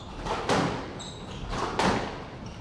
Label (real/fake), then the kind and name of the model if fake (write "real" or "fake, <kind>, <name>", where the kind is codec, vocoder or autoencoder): real